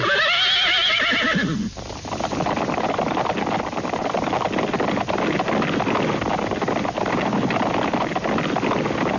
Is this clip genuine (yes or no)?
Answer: yes